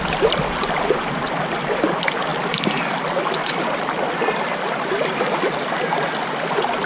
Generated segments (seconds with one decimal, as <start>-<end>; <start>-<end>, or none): none